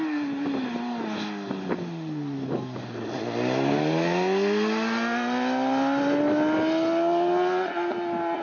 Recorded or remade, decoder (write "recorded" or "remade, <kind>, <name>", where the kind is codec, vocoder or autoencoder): recorded